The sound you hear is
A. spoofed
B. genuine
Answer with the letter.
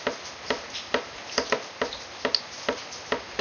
B